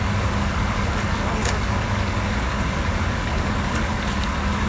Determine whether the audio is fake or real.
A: fake